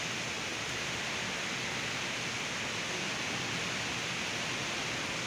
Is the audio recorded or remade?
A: recorded